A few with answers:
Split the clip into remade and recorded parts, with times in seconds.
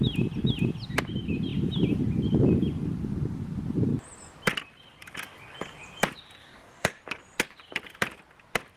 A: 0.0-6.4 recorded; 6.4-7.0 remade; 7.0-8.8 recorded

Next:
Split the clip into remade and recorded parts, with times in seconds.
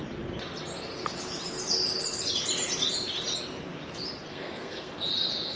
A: 0.0-4.3 recorded; 4.3-4.9 remade; 4.9-5.6 recorded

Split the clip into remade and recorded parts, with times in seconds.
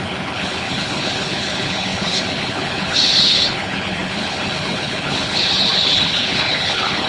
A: 0.0-7.1 remade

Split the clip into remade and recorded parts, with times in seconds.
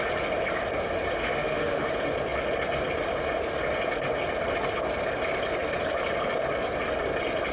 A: 0.0-1.2 recorded; 1.2-1.9 remade; 1.9-7.5 recorded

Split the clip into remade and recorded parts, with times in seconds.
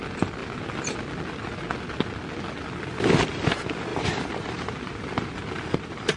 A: 0.0-3.9 recorded; 3.9-5.0 remade; 5.0-6.2 recorded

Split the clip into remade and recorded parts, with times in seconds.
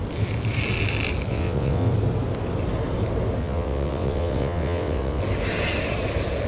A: 0.0-1.3 recorded; 1.3-1.9 remade; 1.9-3.4 recorded; 3.4-5.2 remade; 5.2-6.5 recorded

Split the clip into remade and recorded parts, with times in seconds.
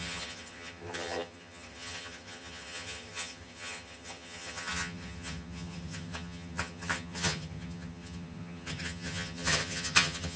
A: 0.0-10.4 remade